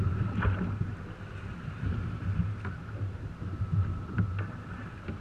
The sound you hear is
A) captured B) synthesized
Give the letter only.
A